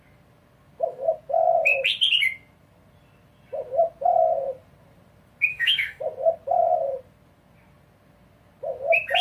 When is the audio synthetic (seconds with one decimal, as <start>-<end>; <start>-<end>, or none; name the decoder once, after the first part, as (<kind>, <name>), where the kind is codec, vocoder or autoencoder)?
5.5-6.0 (autoencoder, DAC-VAE)